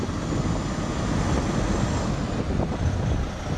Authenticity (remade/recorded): recorded